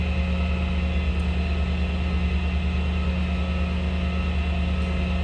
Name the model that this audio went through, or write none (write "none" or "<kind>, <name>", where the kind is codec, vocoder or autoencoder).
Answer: none